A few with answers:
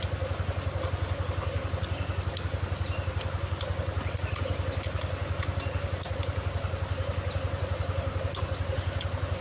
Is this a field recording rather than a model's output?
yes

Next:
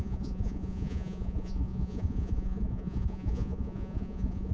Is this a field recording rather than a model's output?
no